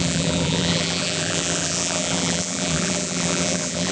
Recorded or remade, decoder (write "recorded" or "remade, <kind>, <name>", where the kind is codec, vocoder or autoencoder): remade, vocoder, BigVGAN v2